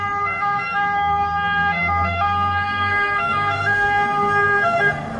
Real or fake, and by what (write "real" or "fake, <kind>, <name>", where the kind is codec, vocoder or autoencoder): fake, codec, SNAC